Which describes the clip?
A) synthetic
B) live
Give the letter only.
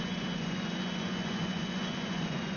A